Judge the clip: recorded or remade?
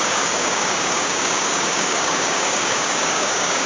remade